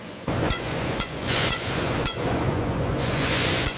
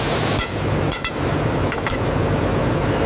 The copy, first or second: first